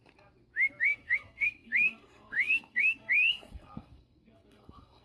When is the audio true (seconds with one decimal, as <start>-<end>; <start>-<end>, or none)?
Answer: 0.0-0.8